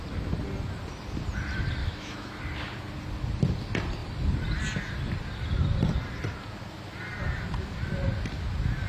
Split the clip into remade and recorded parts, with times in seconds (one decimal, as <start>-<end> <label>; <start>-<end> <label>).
0.0-1.8 recorded; 1.8-2.4 remade; 2.4-8.9 recorded

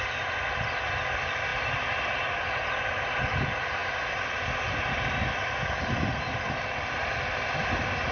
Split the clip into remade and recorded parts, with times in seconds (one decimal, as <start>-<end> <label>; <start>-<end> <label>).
0.0-8.1 recorded

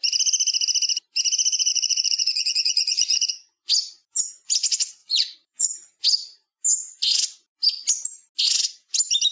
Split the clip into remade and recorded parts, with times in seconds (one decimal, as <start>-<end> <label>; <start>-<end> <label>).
0.0-1.7 recorded; 1.7-3.3 remade; 3.3-5.0 recorded; 5.0-6.0 remade; 6.0-9.3 recorded

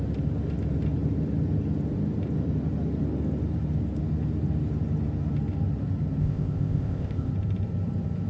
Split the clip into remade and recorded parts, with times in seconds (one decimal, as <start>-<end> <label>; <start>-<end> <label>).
0.0-6.2 recorded; 6.2-7.3 remade; 7.3-8.3 recorded

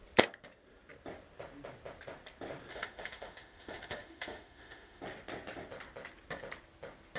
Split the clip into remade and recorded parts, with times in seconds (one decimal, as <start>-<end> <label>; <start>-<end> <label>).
0.0-2.7 recorded; 2.7-5.0 remade; 5.0-7.2 recorded